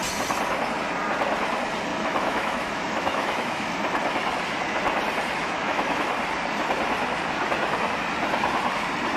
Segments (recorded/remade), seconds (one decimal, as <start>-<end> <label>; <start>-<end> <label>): 0.0-1.9 recorded; 1.9-3.8 remade; 3.8-5.4 recorded; 5.4-6.1 remade; 6.1-9.2 recorded